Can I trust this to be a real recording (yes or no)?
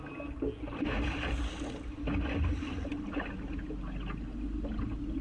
yes